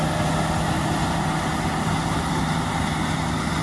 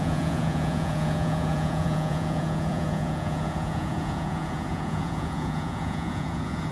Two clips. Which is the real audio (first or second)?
first